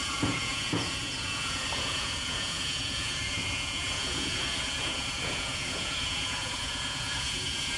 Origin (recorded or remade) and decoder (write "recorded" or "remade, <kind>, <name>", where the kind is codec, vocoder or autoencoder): remade, vocoder, Vocos